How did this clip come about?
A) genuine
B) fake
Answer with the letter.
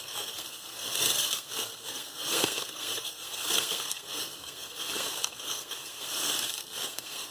B